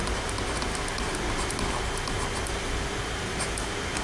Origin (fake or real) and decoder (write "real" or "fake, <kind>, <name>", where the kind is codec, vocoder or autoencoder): real